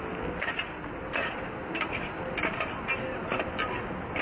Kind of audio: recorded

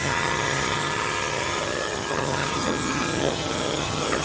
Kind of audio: remade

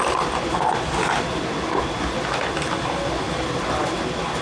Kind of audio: recorded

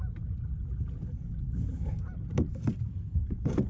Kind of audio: recorded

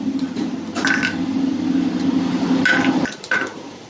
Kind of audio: remade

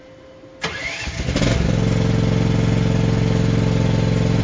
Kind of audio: recorded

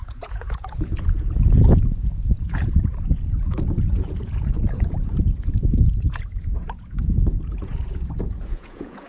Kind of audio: remade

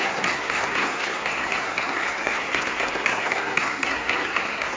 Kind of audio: remade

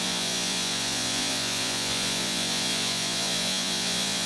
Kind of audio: remade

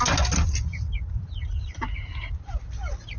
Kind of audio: recorded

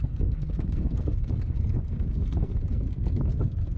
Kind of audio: remade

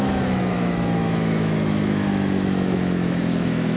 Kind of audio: remade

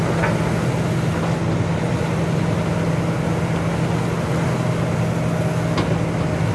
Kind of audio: recorded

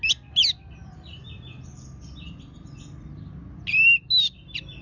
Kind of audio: recorded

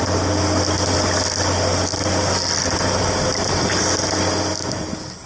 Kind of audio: recorded